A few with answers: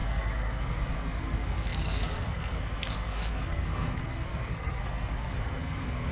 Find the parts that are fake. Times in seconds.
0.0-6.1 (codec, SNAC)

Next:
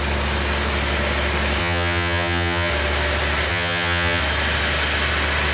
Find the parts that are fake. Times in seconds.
1.6-2.7 (vocoder, HiFi-GAN); 3.5-4.2

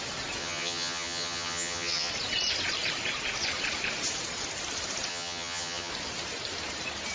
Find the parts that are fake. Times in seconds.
0.4-2.1 (vocoder, HiFi-GAN); 5.1-5.9

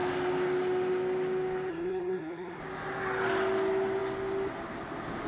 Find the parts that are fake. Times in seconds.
1.7-2.6 (codec, SNAC)

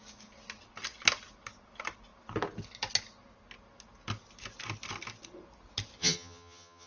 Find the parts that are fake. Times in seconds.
6.0-6.9 (vocoder, HiFi-GAN)